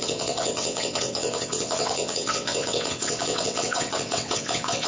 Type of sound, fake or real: fake